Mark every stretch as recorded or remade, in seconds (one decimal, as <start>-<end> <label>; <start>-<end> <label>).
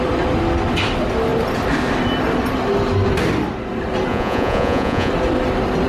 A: 0.0-4.1 recorded; 4.1-5.1 remade; 5.1-5.9 recorded